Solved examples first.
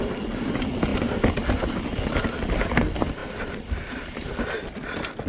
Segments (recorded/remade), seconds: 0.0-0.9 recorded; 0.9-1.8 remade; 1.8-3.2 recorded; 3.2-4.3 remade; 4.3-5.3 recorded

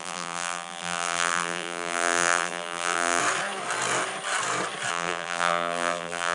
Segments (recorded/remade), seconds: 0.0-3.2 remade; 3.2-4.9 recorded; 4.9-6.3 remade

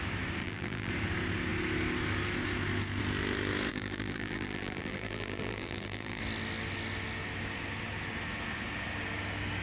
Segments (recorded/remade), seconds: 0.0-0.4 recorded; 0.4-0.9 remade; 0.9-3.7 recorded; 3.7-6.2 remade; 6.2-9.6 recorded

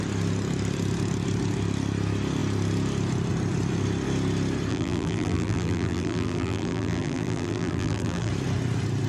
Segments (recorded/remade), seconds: 0.0-4.7 recorded; 4.7-8.3 remade; 8.3-9.1 recorded

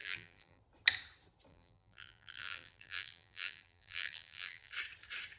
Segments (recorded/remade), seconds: 0.0-0.6 remade; 0.6-1.5 recorded; 1.5-4.7 remade; 4.7-5.4 recorded

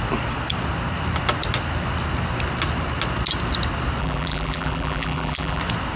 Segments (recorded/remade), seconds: 0.0-4.0 recorded; 4.0-5.6 remade; 5.6-6.0 recorded

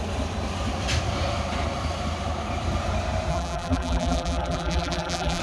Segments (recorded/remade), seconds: 0.0-3.3 recorded; 3.3-5.4 remade